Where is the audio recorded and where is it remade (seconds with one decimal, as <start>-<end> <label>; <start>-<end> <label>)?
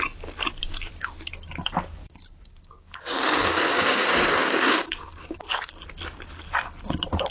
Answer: 0.0-2.0 recorded; 2.0-5.4 remade; 5.4-7.3 recorded